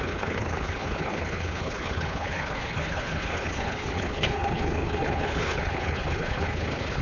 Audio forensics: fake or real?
fake